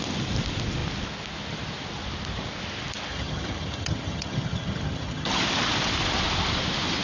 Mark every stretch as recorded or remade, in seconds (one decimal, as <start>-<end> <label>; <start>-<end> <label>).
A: 0.0-3.1 recorded; 3.1-5.4 remade; 5.4-7.0 recorded